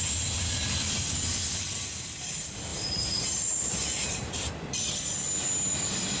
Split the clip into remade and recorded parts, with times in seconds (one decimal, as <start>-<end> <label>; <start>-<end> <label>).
0.0-2.7 recorded; 2.7-4.5 remade; 4.5-6.2 recorded